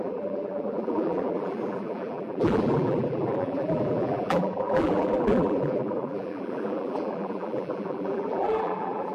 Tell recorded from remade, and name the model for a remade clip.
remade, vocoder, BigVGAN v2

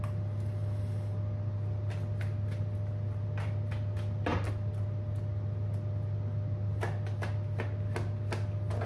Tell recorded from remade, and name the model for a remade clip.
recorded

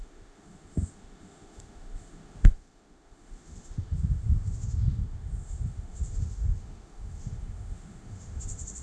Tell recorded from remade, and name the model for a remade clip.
remade, autoencoder, DAC-VAE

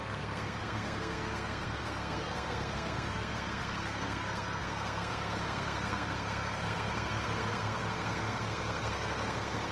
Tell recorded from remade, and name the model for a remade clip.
remade, codec, SNAC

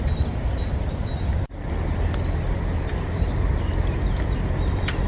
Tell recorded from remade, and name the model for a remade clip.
recorded